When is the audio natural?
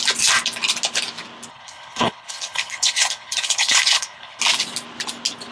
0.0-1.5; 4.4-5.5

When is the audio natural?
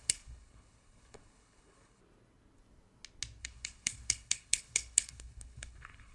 2.0-3.4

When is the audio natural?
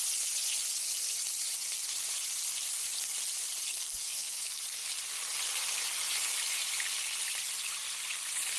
0.0-3.7; 4.6-8.6